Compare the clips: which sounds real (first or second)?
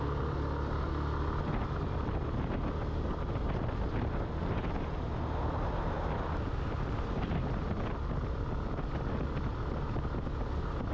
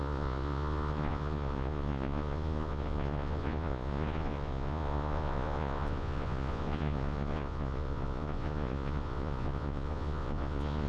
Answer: first